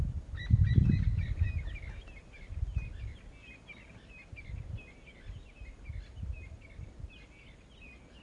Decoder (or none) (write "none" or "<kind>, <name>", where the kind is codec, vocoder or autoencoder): none